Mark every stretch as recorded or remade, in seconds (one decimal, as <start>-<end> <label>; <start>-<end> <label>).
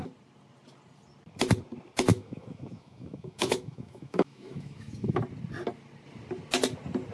0.0-2.1 recorded; 2.1-5.2 remade; 5.2-7.1 recorded